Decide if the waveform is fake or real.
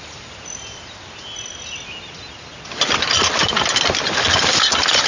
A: real